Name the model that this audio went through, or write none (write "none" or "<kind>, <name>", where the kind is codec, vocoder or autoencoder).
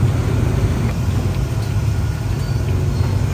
none